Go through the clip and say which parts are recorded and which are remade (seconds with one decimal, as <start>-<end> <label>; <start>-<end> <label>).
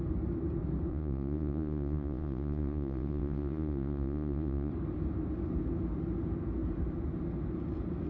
0.0-0.9 recorded; 0.9-4.7 remade; 4.7-8.1 recorded